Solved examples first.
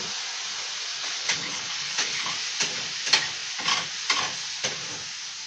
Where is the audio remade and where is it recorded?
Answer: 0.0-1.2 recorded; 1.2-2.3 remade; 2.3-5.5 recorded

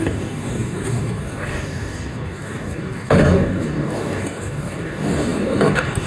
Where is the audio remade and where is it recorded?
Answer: 0.0-6.1 remade

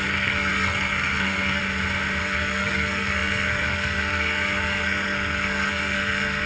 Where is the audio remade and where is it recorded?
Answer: 0.0-1.6 remade; 1.6-2.2 recorded; 2.2-6.5 remade

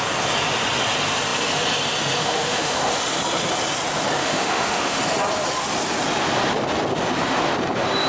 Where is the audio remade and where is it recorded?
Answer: 0.0-2.2 recorded; 2.2-2.8 remade; 2.8-4.2 recorded; 4.2-5.0 remade; 5.0-8.1 recorded

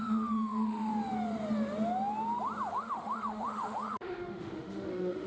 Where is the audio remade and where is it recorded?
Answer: 0.0-0.9 remade; 0.9-2.7 recorded; 2.7-5.3 remade

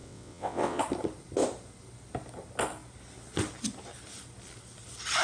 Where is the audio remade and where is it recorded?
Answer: 0.0-0.8 remade; 0.8-5.2 recorded